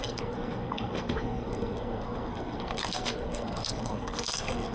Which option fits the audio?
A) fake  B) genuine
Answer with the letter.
A